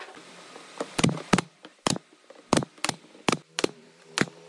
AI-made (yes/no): no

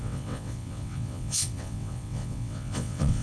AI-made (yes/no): yes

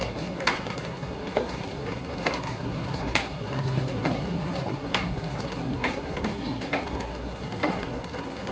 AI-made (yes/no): yes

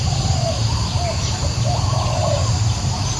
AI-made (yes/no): yes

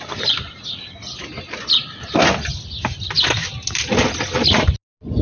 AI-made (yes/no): no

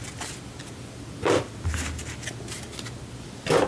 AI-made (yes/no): no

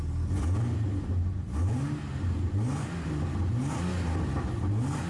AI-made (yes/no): no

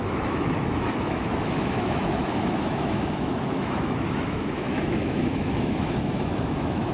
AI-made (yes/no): yes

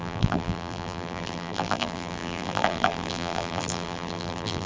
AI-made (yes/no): yes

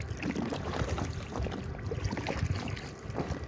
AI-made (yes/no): no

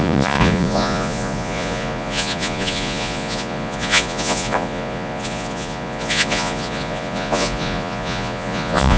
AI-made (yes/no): yes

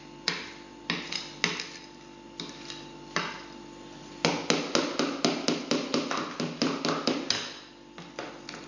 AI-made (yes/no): no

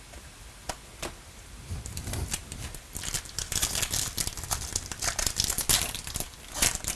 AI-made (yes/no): no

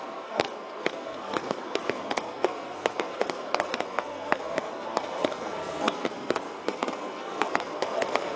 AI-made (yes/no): yes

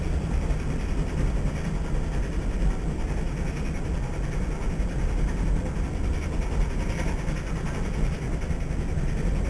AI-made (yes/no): no